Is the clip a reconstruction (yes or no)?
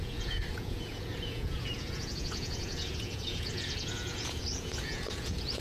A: yes